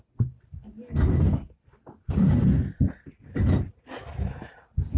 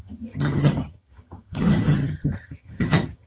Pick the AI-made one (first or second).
second